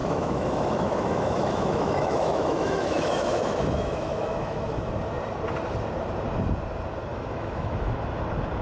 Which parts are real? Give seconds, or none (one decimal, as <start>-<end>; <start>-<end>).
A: 4.9-7.1; 7.9-8.6